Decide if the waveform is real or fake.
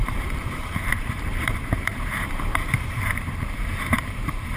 fake